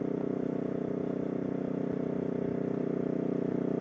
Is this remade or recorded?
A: recorded